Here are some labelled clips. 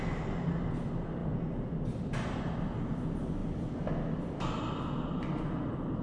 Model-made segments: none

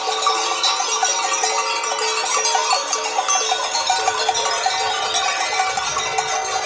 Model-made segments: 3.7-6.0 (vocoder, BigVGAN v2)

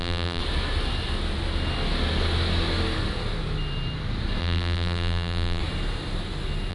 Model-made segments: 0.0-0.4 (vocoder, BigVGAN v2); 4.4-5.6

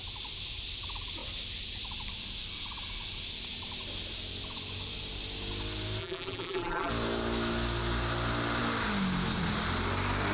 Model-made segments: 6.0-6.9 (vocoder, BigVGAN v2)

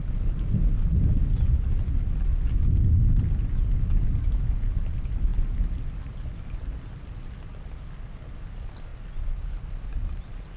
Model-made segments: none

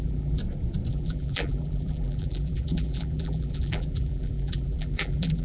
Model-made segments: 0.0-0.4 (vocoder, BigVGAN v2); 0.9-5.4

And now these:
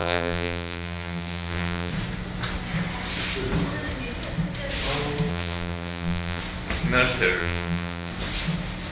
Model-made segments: 0.0-1.9 (vocoder, BigVGAN v2); 5.3-6.4; 7.4-8.1

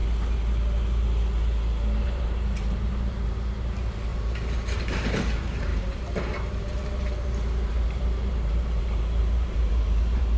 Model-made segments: 2.0-10.4 (vocoder, BigVGAN v2)